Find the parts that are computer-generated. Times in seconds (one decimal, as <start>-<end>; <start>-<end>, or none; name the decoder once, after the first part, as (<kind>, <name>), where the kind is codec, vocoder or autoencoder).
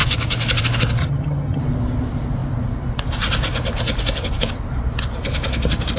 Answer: 1.0-1.6 (vocoder, HiFi-GAN)